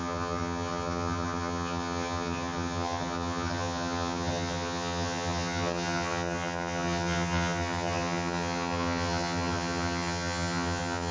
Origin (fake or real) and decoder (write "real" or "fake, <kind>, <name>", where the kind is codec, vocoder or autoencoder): fake, vocoder, HiFi-GAN